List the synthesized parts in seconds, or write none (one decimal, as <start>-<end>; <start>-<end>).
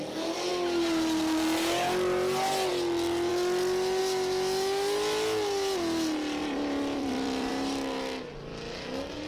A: 6.4-7.5